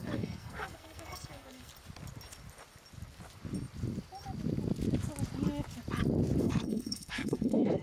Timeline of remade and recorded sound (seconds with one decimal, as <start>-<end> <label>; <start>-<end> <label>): 0.0-1.7 remade; 1.7-6.4 recorded; 6.4-7.8 remade